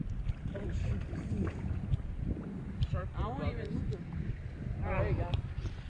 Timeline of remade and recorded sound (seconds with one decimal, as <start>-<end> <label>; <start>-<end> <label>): 0.0-5.9 recorded